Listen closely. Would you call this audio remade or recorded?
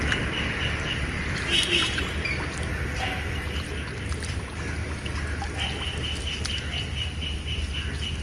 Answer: recorded